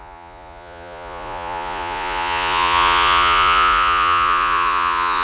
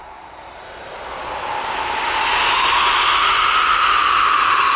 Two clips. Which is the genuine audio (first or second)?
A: second